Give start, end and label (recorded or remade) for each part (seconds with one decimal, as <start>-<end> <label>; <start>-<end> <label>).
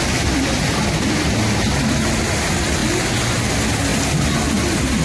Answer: 0.0-5.0 recorded